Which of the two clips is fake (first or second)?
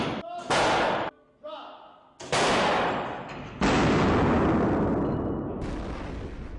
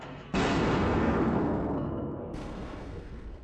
second